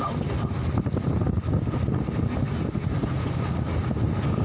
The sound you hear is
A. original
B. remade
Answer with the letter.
A